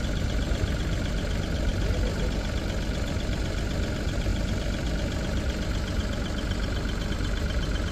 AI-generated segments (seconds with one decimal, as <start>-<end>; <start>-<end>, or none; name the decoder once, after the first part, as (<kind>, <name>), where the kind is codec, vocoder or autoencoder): none

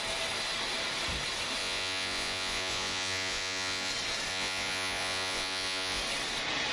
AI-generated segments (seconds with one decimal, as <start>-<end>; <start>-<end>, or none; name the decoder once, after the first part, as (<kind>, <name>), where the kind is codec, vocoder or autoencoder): 1.6-3.9 (vocoder, Vocos); 4.3-6.0

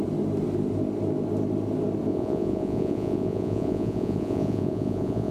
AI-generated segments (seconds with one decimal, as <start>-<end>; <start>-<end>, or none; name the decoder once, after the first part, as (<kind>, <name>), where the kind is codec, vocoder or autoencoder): 2.1-5.3 (vocoder, Vocos)

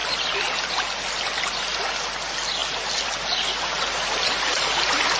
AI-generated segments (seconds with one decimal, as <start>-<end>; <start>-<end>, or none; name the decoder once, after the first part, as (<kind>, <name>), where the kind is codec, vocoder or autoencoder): none

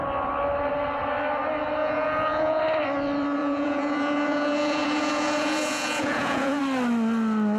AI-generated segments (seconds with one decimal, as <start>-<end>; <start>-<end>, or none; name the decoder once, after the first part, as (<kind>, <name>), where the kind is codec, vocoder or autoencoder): 1.8-2.6 (vocoder, Vocos); 3.4-6.6

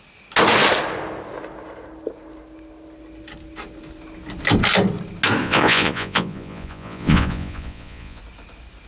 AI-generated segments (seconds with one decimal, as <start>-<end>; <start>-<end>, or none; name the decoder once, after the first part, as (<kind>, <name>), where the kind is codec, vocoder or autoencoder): 5.4-8.2 (vocoder, Vocos)